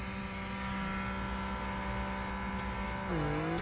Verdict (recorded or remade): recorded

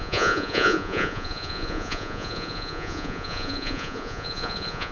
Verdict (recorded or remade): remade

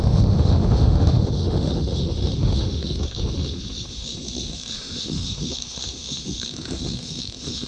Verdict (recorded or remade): remade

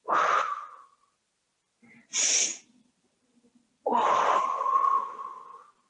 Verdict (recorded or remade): remade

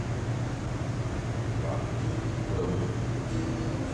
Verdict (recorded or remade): recorded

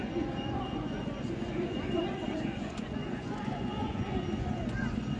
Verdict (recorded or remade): remade